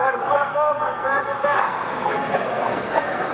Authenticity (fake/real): fake